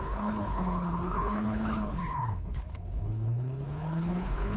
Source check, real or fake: fake